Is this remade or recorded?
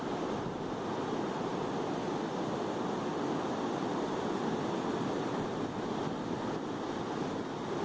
recorded